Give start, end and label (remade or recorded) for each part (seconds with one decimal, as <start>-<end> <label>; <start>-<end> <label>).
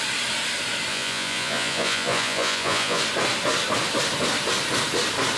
0.0-0.9 recorded; 0.9-3.0 remade; 3.0-5.4 recorded